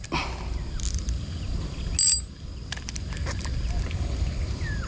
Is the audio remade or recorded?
recorded